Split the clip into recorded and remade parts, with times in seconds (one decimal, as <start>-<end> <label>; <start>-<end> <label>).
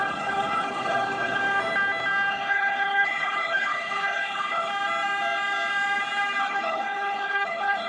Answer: 0.0-1.4 remade; 1.4-2.3 recorded; 2.3-4.7 remade; 4.7-6.4 recorded; 6.4-7.9 remade